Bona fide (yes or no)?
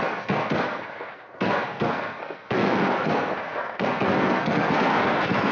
no